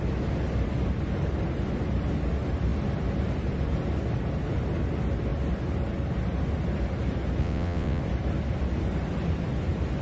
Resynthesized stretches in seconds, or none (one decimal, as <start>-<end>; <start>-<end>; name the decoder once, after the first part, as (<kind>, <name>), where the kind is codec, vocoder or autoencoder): 7.4-8.0 (vocoder, WaveNeXt)